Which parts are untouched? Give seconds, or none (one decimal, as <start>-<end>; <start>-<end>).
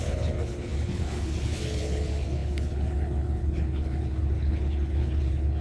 none